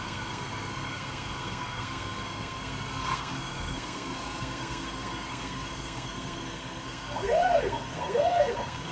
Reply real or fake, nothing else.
fake